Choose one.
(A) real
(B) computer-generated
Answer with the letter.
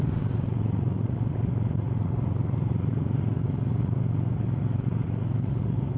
B